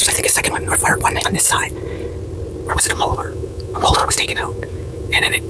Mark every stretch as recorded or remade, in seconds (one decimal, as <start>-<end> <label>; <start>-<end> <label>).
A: 0.0-2.7 recorded; 2.7-5.5 remade